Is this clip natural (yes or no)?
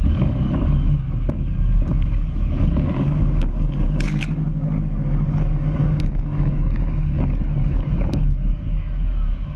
no